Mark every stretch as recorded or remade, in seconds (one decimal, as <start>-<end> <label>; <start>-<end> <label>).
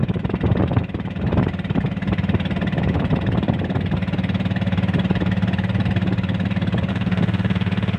0.0-6.9 recorded; 6.9-8.0 remade